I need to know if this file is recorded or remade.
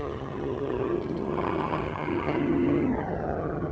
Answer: remade